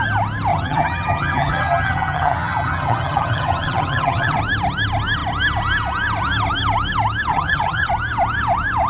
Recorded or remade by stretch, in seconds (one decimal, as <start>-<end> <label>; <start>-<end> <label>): 0.0-0.5 recorded; 0.5-4.4 remade; 4.4-7.3 recorded; 7.3-7.9 remade; 7.9-8.9 recorded